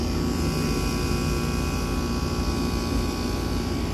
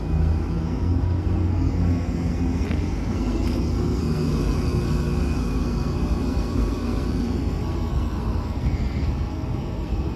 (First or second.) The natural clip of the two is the first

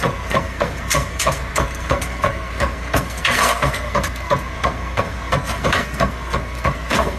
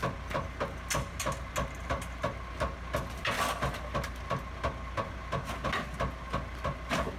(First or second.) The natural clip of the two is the second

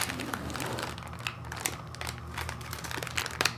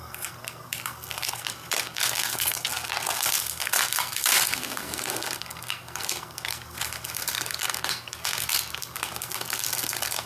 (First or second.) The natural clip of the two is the first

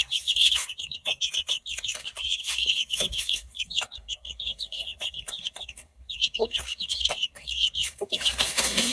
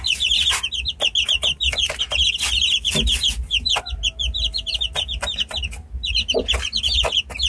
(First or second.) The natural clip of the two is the second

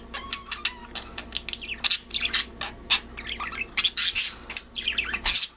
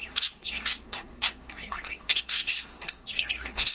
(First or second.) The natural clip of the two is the first